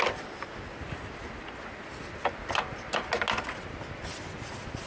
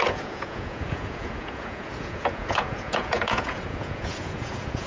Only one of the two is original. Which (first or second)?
first